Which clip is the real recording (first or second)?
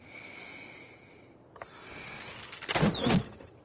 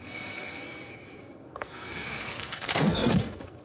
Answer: first